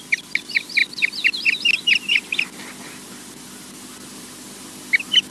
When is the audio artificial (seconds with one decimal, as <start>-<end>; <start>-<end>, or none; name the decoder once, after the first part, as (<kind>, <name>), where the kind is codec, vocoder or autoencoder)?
none